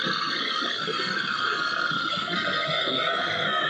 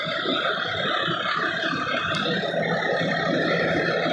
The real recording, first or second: second